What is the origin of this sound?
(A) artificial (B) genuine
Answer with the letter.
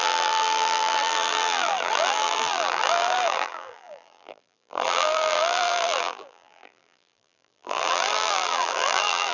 A